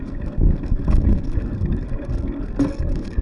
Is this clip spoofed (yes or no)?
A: yes